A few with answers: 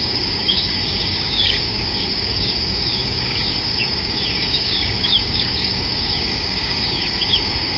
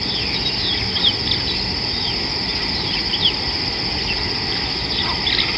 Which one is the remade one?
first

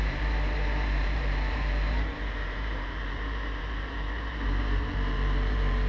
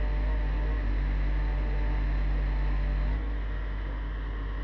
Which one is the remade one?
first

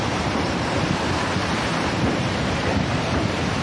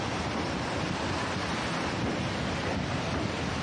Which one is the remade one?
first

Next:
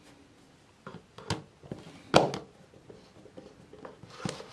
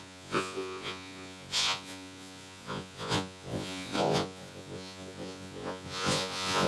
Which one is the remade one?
second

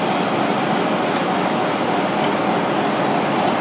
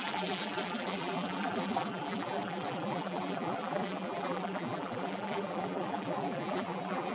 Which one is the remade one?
second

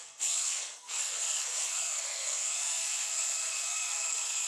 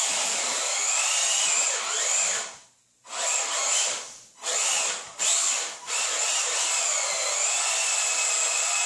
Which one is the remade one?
first